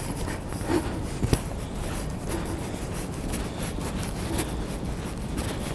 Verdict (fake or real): real